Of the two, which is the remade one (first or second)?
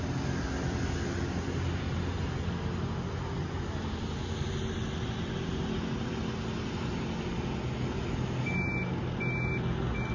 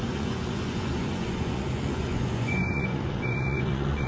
second